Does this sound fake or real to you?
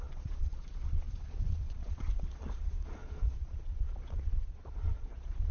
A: fake